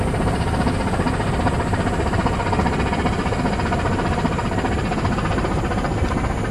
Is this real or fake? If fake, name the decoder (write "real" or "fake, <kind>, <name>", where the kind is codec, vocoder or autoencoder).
fake, vocoder, BigVGAN v2